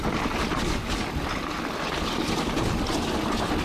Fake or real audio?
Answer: real